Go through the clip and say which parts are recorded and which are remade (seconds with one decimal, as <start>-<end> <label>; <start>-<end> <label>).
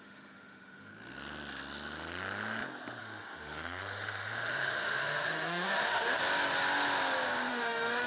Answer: 0.0-0.9 remade; 0.9-3.0 recorded; 3.0-6.2 remade; 6.2-7.5 recorded; 7.5-8.1 remade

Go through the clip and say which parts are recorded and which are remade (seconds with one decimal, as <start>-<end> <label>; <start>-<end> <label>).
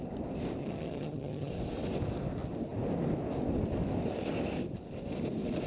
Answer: 0.0-0.6 recorded; 0.6-1.5 remade; 1.5-5.7 recorded